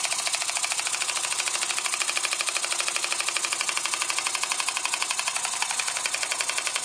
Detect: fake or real real